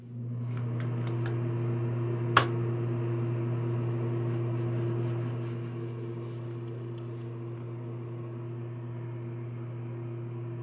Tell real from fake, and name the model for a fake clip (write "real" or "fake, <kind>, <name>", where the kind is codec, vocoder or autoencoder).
real